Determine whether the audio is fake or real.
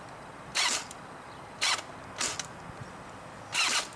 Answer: real